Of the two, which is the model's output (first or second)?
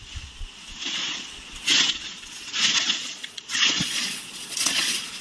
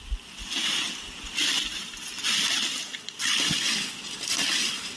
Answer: first